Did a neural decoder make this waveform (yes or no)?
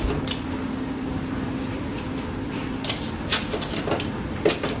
no